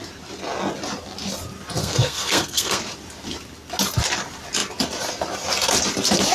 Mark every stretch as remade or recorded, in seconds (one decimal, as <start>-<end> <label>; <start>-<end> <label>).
0.0-1.8 recorded; 1.8-2.8 remade; 2.8-6.3 recorded